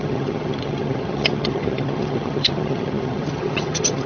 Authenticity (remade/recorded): remade